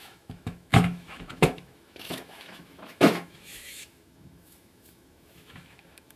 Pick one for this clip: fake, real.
fake